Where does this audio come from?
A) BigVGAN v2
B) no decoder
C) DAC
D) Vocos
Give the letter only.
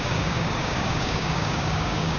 C